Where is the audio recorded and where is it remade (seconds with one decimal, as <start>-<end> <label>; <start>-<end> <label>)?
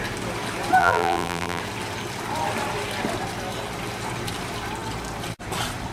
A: 0.0-0.8 recorded; 0.8-1.6 remade; 1.6-5.9 recorded